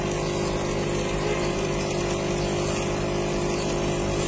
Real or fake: real